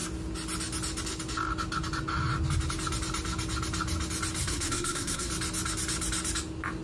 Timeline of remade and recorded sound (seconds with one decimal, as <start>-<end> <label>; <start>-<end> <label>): 0.0-4.4 recorded; 4.4-5.3 remade; 5.3-6.8 recorded